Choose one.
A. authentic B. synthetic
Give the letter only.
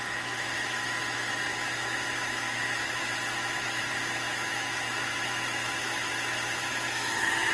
B